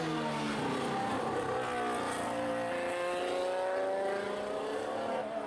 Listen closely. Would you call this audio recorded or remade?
recorded